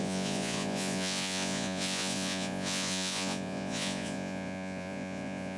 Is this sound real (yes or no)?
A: no